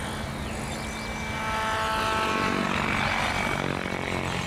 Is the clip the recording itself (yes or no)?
yes